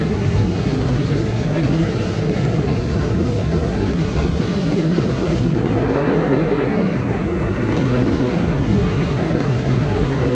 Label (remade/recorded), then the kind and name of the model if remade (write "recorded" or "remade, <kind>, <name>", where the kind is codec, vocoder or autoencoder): remade, codec, SNAC